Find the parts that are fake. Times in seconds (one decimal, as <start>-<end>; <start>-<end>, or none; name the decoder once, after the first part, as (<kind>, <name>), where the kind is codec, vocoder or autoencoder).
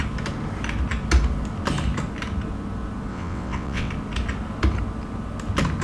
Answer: 3.1-3.9 (vocoder, WaveNeXt)